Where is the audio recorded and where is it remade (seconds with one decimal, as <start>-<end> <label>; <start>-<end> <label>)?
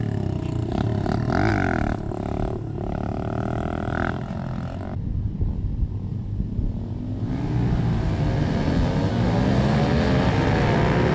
0.0-11.1 recorded